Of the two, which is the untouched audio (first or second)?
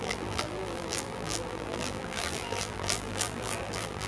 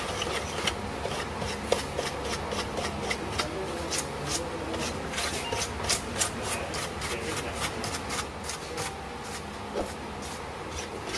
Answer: second